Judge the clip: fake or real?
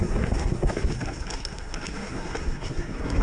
fake